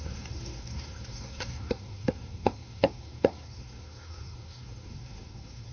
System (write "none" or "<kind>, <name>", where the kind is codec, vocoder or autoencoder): codec, SNAC